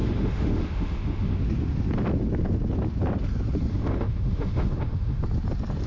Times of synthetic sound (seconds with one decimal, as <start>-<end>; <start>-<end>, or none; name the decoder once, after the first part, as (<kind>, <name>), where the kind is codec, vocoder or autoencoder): 0.0-1.4 (autoencoder, DAC-VAE); 3.7-5.2